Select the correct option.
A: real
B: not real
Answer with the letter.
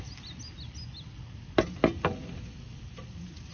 A